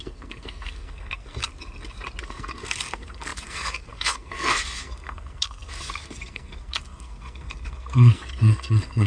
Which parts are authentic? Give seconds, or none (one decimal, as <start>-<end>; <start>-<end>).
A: 1.5-2.2